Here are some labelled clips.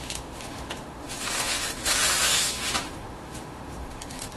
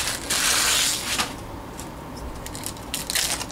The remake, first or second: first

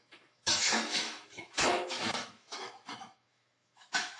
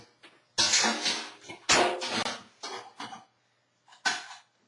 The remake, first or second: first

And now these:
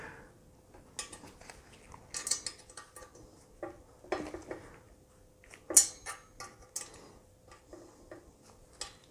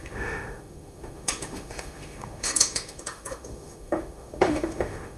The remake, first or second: second